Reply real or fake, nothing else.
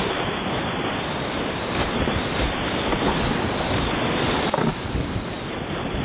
real